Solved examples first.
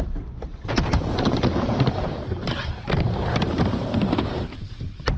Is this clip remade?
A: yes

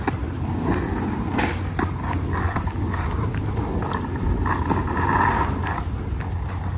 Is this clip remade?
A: no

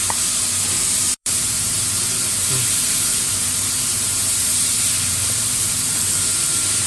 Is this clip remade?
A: yes